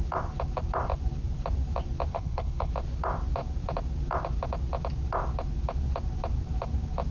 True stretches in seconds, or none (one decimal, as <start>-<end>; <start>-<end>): 0.0-2.1; 2.7-7.1